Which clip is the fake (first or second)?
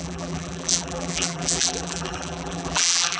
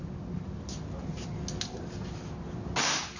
first